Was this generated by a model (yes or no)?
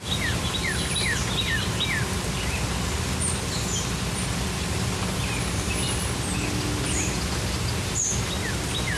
no